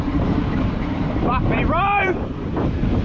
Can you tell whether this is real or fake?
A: fake